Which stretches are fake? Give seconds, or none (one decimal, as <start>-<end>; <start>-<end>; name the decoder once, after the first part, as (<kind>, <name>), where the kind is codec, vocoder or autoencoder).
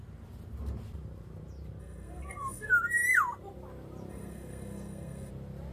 1.8-2.7 (codec, SNAC); 4.1-5.3